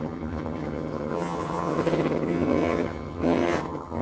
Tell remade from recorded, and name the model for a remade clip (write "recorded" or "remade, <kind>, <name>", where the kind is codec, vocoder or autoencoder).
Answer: remade, vocoder, HiFi-GAN